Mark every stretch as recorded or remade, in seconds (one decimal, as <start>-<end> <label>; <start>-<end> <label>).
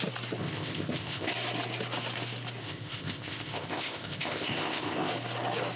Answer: 0.0-0.4 recorded; 0.4-1.3 remade; 1.3-2.6 recorded; 2.6-5.1 remade; 5.1-5.8 recorded